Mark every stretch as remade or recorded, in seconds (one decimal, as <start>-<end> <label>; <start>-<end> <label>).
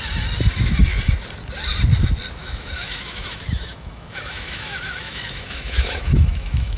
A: 0.0-2.4 recorded; 2.4-6.8 remade